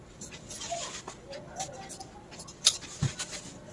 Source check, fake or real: real